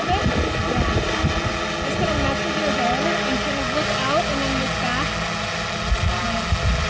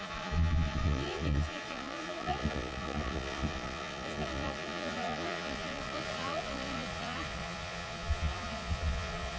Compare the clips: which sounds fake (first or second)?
second